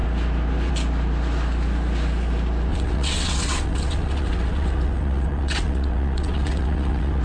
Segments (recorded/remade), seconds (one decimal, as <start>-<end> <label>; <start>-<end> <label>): 0.0-2.7 recorded; 2.7-7.2 remade